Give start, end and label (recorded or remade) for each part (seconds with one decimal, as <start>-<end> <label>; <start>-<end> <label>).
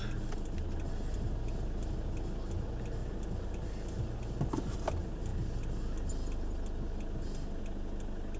0.0-8.4 recorded